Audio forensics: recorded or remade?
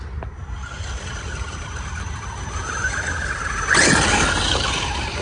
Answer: recorded